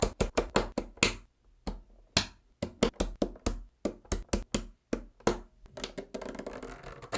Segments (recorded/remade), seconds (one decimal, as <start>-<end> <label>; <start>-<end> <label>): 0.0-0.5 remade; 0.5-7.2 recorded